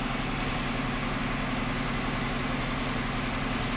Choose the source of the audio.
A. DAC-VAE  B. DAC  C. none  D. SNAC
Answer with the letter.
C